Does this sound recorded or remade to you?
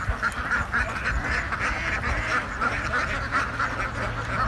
recorded